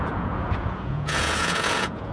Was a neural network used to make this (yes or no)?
yes